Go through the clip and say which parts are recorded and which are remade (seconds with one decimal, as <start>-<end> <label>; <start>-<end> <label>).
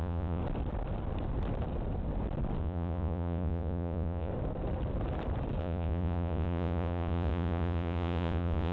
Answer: 0.0-0.4 remade; 0.4-2.6 recorded; 2.6-4.3 remade; 4.3-5.6 recorded; 5.6-8.7 remade